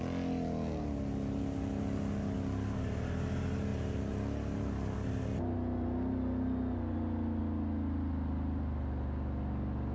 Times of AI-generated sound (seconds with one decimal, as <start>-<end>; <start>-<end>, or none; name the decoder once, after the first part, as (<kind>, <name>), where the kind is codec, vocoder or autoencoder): none